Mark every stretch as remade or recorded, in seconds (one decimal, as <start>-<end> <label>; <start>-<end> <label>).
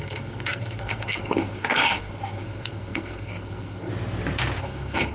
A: 0.0-3.9 remade; 3.9-4.6 recorded; 4.6-5.1 remade